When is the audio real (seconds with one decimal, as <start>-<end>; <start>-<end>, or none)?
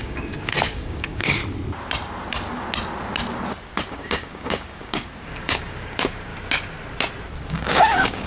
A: 1.4-3.9; 6.3-7.4